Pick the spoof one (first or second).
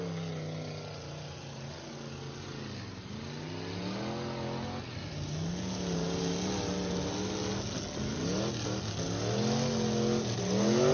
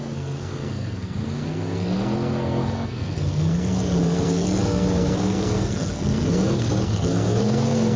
second